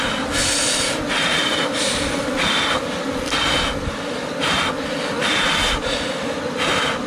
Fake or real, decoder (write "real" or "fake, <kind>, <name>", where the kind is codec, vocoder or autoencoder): real